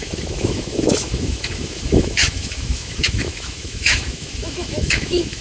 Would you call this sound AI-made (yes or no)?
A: yes